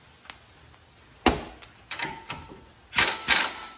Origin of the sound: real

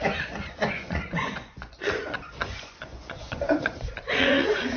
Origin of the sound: fake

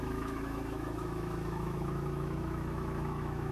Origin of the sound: fake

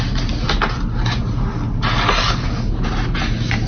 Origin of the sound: real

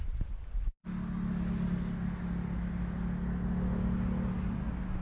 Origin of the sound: real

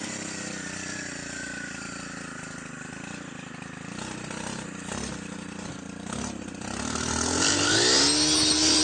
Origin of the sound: real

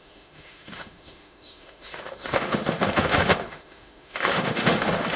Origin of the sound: fake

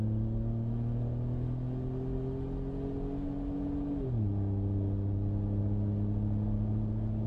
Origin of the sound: real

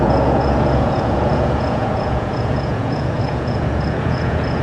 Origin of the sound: fake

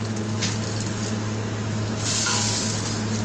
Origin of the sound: real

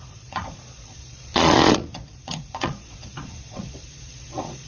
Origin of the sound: fake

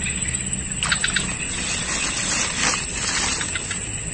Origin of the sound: real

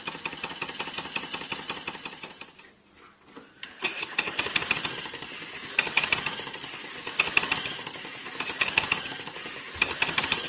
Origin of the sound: real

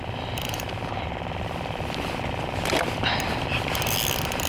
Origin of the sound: real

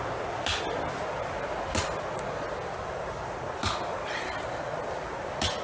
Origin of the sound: real